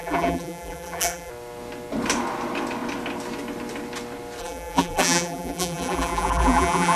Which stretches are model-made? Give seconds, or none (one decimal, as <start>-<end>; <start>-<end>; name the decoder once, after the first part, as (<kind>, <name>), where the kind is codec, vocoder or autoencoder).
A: 0.0-1.3 (vocoder, BigVGAN v2); 4.4-7.0